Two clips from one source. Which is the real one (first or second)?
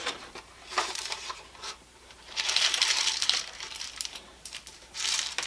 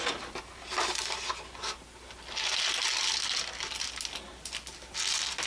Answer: second